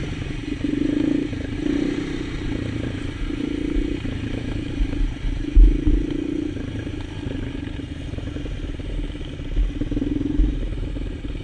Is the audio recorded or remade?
remade